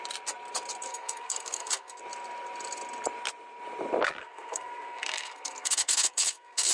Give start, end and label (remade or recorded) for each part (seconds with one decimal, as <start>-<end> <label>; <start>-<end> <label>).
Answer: 0.0-0.9 recorded; 0.9-2.0 remade; 2.0-4.2 recorded; 4.2-6.7 remade